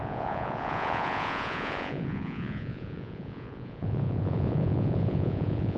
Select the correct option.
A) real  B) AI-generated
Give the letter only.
B